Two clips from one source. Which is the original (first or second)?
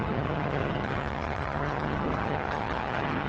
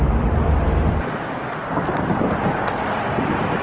second